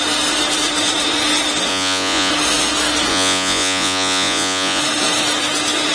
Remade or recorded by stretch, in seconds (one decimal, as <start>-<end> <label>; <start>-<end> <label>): 0.0-1.7 recorded; 1.7-2.3 remade; 2.3-3.1 recorded; 3.1-4.8 remade; 4.8-5.9 recorded